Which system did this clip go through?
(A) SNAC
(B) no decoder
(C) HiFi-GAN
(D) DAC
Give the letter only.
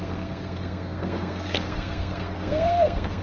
A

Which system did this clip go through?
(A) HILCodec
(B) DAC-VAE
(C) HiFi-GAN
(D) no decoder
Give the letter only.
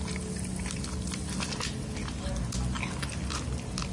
D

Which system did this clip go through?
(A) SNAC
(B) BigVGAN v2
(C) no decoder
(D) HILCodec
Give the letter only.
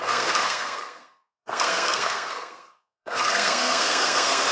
A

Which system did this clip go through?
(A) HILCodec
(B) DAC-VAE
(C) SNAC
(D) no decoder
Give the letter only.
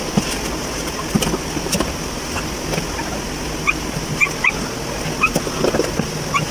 D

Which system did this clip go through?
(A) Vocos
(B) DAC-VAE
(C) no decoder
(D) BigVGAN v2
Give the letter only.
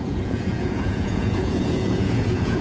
A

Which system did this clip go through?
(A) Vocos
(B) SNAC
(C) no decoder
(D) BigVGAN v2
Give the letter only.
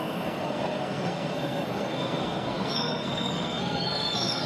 B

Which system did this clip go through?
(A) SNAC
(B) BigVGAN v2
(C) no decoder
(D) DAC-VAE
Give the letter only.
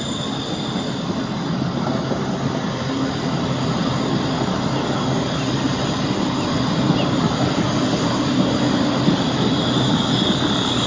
C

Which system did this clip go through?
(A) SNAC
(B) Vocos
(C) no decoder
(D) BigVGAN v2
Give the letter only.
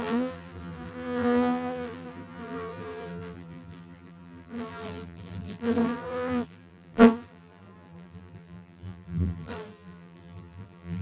D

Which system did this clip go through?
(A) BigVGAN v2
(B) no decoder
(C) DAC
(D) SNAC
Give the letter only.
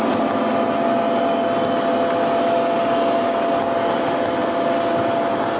B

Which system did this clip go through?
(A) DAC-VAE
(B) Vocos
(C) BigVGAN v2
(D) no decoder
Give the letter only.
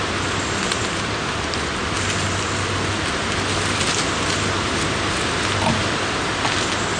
D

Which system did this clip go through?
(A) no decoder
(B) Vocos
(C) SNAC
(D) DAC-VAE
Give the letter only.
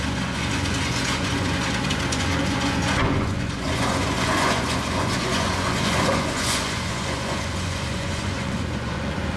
B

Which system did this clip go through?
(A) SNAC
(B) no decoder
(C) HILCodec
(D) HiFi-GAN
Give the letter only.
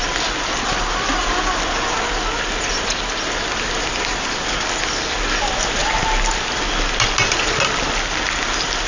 B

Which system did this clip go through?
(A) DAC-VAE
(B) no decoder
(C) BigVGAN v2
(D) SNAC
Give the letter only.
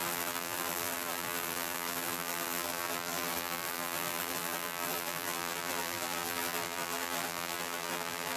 C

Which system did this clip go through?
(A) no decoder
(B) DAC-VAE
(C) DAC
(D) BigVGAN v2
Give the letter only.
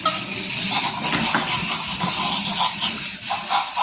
A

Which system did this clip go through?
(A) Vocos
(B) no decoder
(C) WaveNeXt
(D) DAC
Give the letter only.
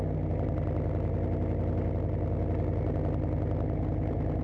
B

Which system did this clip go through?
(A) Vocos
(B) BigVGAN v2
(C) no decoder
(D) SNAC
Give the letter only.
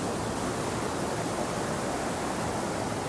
C